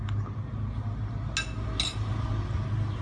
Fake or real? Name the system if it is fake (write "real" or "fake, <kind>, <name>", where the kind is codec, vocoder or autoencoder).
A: real